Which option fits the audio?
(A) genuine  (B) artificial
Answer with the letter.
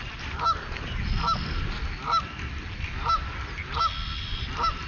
A